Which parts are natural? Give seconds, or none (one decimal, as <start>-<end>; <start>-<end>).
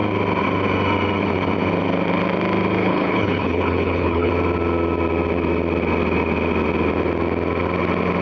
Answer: 0.0-2.8; 4.3-8.2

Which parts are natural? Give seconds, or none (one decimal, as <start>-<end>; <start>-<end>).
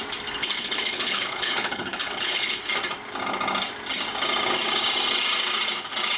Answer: 0.0-0.4; 2.6-6.2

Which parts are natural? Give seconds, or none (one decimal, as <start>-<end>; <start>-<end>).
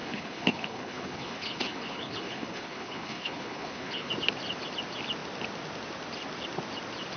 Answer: 4.1-7.2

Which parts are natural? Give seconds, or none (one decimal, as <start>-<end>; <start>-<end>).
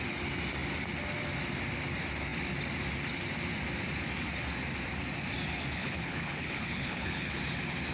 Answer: 0.0-5.8; 7.4-7.9